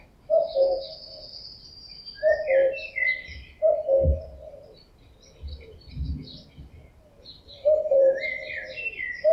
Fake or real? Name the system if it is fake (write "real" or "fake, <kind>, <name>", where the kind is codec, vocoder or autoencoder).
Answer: fake, vocoder, BigVGAN v2